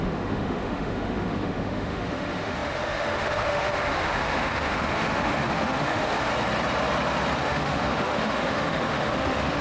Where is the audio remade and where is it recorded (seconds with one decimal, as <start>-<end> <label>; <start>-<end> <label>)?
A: 0.0-6.3 remade; 6.3-7.4 recorded; 7.4-9.6 remade